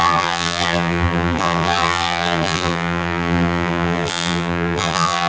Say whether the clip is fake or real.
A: fake